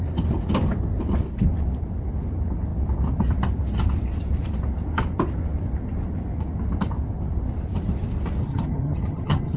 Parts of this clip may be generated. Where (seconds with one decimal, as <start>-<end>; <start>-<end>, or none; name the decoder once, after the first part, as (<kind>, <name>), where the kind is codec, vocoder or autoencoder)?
8.4-9.6 (vocoder, HiFi-GAN)